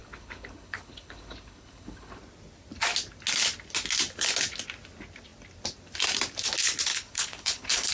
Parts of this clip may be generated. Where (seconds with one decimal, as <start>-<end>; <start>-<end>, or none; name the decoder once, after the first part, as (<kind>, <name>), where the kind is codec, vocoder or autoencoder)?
0.0-2.2 (codec, HILCodec); 6.9-7.9